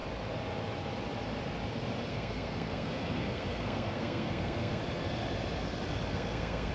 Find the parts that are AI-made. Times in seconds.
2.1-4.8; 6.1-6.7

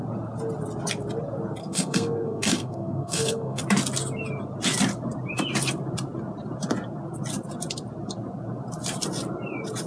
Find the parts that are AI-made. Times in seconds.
1.6-3.6

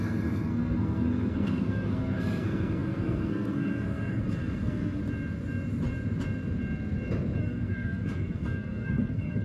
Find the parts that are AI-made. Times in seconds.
0.0-5.0; 7.4-9.4

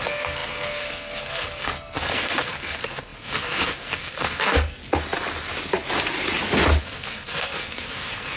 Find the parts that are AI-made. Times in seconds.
0.0-4.8; 6.8-8.4